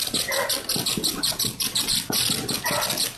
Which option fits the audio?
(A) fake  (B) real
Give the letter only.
B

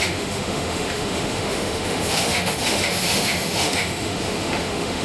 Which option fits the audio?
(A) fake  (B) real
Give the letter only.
A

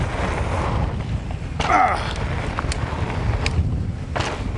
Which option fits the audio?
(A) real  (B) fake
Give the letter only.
A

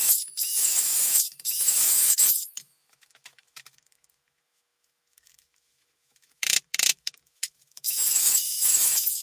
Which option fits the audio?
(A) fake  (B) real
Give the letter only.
A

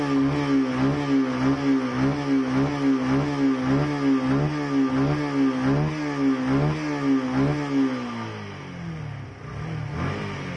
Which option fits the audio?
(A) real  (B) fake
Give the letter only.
A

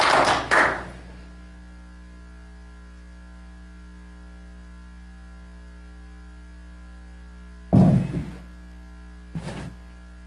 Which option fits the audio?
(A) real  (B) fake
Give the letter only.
A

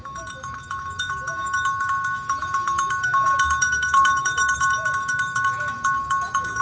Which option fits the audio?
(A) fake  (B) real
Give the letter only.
A